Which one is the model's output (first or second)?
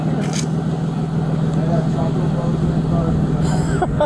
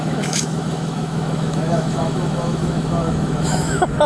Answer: second